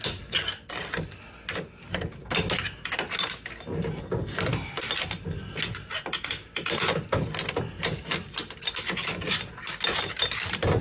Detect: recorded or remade recorded